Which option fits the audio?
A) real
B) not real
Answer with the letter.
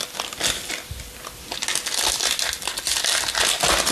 A